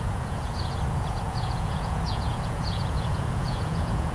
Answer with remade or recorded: remade